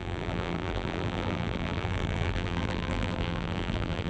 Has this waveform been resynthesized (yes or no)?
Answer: yes